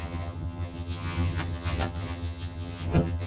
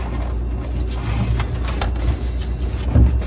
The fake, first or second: first